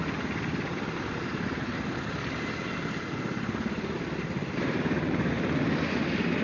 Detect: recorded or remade remade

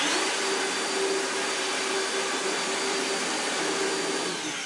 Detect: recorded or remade recorded